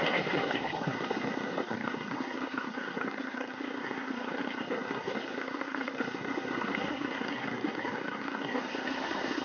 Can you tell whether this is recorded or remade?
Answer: remade